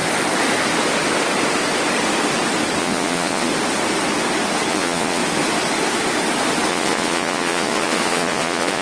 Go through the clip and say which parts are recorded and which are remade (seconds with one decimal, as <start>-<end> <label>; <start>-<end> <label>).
0.0-2.8 recorded; 2.8-3.5 remade; 3.5-4.7 recorded; 4.7-5.2 remade; 5.2-6.7 recorded; 6.7-8.8 remade